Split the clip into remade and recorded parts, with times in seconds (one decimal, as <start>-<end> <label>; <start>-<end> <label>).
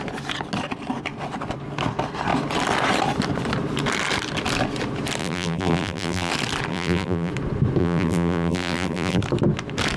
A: 0.0-5.2 recorded; 5.2-6.3 remade; 6.3-6.7 recorded; 6.7-7.3 remade; 7.3-7.8 recorded; 7.8-9.2 remade; 9.2-10.0 recorded